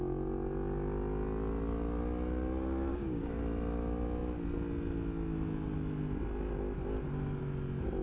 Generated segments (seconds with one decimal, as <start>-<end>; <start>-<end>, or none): 2.9-3.4